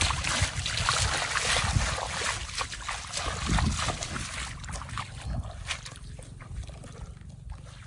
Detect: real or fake real